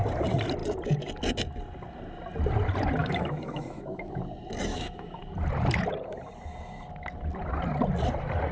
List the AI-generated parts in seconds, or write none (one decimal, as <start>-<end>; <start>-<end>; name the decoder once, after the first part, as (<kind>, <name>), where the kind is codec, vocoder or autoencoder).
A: 3.0-4.2 (autoencoder, DAC-VAE); 4.7-5.2